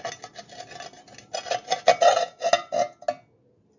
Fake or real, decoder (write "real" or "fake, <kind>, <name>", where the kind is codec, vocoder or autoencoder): real